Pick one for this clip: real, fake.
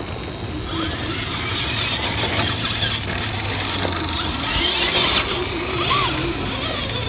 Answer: real